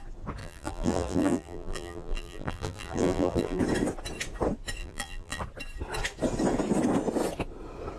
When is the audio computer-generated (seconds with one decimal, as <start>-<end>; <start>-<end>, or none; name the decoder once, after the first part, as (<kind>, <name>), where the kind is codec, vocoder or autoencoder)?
0.4-3.6 (vocoder, BigVGAN v2); 4.8-5.4